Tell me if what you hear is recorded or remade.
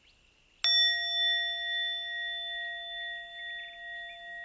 recorded